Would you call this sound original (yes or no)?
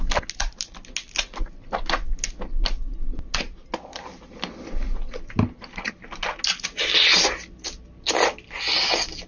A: yes